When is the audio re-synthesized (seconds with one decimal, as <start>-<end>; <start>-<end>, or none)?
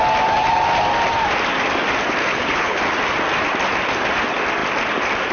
2.2-2.8